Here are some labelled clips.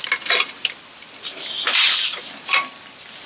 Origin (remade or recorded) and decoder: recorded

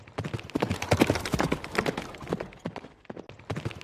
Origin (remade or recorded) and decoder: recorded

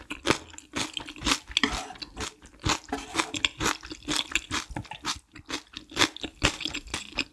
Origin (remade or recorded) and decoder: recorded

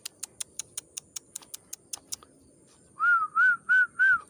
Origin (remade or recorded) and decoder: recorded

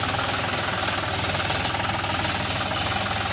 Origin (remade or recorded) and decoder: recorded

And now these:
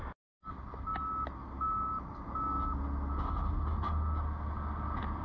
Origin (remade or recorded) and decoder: recorded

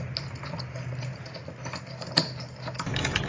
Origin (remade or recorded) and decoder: recorded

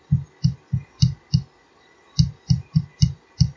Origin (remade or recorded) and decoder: recorded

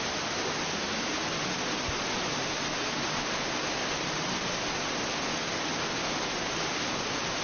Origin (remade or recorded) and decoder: recorded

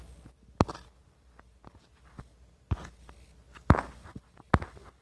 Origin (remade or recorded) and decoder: recorded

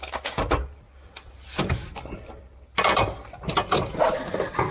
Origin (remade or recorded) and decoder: recorded